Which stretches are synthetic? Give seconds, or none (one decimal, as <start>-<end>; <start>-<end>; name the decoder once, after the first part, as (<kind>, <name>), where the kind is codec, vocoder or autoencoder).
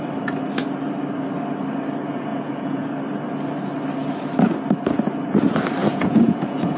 2.3-2.9 (vocoder, Vocos); 5.8-6.8